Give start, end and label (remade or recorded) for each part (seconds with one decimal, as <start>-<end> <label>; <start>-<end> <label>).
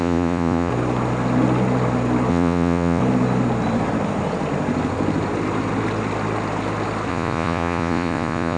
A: 0.0-0.7 remade; 0.7-2.3 recorded; 2.3-3.0 remade; 3.0-7.1 recorded; 7.1-8.6 remade